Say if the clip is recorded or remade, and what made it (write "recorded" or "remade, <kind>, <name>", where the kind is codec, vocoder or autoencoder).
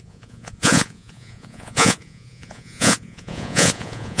remade, vocoder, Vocos